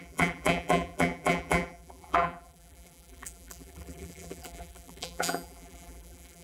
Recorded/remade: remade